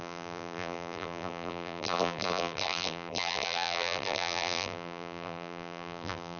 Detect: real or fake fake